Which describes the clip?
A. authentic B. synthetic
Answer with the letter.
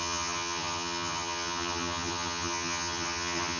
B